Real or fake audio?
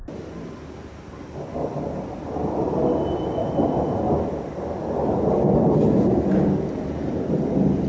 real